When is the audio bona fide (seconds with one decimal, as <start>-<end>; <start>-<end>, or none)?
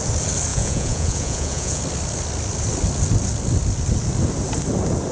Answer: 0.0-0.5; 1.8-5.1